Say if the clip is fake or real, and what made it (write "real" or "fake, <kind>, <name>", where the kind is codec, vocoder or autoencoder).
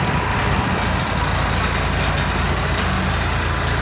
real